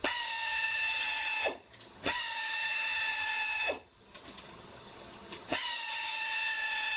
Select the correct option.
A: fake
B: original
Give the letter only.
A